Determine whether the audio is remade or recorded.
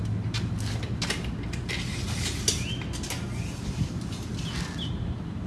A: recorded